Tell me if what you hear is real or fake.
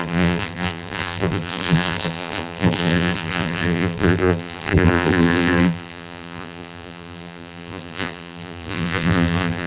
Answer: fake